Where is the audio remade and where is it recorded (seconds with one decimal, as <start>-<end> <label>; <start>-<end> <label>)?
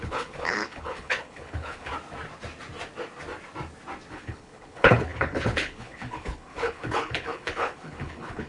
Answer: 0.0-1.9 remade; 1.9-4.1 recorded; 4.1-8.5 remade